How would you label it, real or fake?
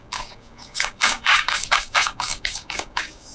fake